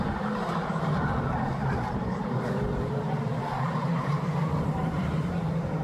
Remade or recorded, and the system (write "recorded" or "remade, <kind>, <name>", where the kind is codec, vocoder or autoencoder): remade, vocoder, BigVGAN v2